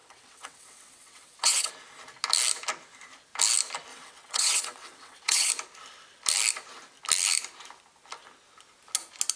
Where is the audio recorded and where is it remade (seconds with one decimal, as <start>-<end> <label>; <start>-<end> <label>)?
0.0-1.7 remade; 1.7-3.9 recorded; 3.9-5.5 remade; 5.5-9.4 recorded